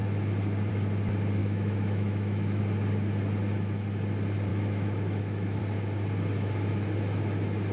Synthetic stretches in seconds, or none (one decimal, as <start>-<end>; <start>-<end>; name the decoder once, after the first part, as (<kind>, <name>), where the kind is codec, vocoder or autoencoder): 1.4-2.6 (autoencoder, DAC-VAE); 4.5-5.6